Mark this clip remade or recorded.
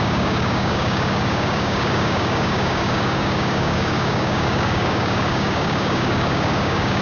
remade